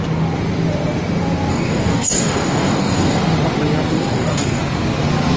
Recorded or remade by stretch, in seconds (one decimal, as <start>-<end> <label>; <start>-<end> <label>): 0.0-1.5 recorded; 1.5-3.2 remade; 3.2-3.9 recorded; 3.9-4.6 remade; 4.6-5.4 recorded